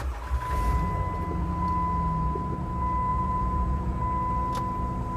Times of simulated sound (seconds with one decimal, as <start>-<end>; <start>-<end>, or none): 3.1-4.0